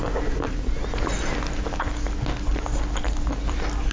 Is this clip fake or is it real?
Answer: real